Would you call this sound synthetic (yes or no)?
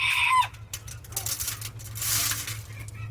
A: no